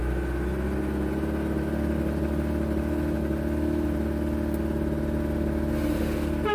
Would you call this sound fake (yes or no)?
no